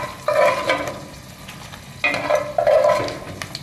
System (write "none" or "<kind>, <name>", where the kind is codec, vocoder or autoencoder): none